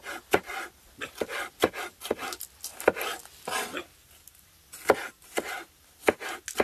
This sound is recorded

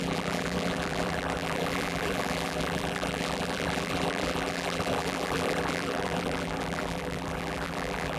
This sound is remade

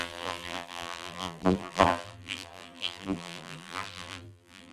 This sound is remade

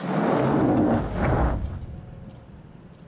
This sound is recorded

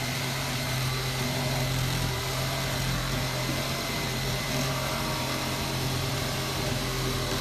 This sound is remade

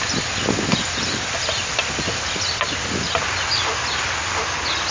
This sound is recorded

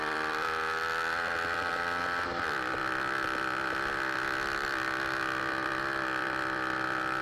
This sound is remade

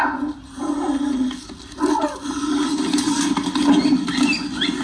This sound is recorded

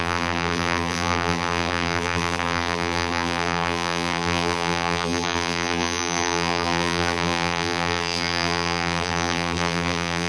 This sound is remade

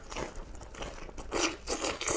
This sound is recorded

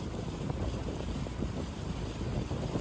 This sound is remade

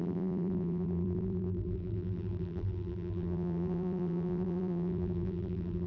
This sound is remade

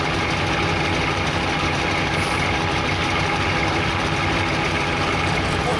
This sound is recorded